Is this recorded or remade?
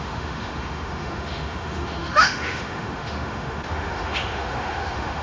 remade